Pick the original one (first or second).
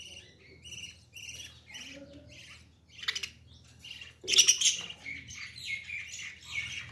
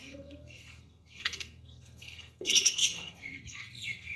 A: first